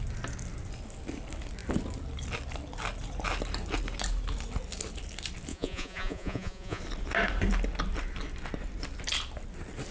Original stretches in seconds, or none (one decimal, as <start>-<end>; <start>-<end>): 0.0-5.5; 6.8-9.9